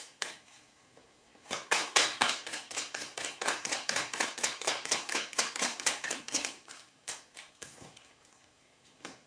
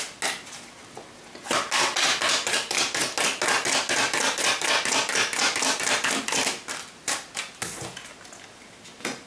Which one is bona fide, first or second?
second